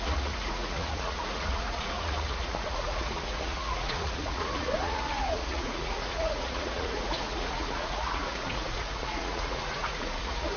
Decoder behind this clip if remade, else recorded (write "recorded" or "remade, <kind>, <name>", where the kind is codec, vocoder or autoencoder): remade, vocoder, Vocos